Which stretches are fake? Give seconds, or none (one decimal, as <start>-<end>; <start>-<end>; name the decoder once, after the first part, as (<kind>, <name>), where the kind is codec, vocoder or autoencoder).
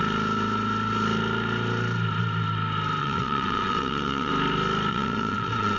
3.0-4.3 (vocoder, WaveNeXt); 4.9-5.8